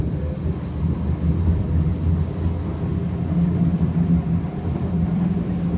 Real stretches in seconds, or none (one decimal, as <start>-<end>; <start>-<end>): 0.4-1.4; 1.9-3.7